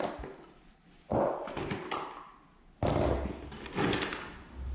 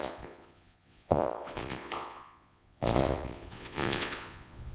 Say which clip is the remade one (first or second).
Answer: second